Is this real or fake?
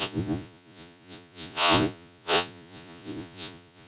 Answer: fake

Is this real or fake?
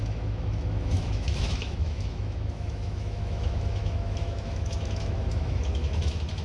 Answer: fake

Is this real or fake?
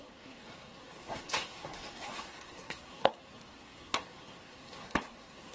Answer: fake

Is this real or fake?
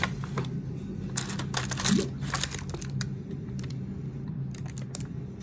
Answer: real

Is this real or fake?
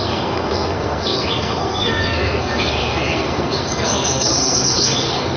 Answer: fake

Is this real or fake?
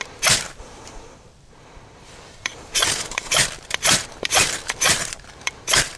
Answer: fake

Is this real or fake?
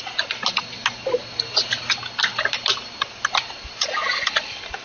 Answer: real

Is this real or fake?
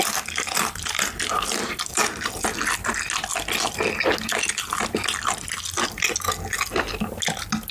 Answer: real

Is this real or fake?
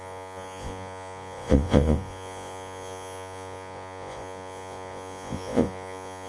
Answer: fake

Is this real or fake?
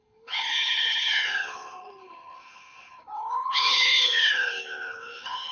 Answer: fake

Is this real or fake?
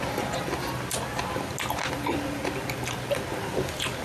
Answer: real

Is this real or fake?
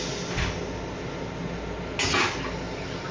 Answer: real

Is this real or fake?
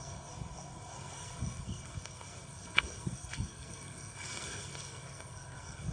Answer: fake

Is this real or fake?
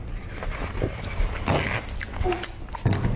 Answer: real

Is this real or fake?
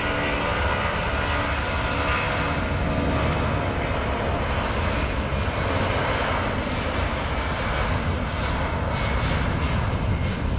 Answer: real